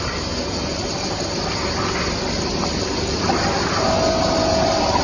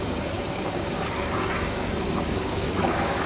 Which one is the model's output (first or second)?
second